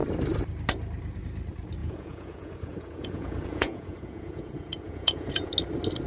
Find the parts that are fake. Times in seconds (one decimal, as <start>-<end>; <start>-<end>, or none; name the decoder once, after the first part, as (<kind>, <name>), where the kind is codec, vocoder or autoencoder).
1.8-5.5 (vocoder, Vocos)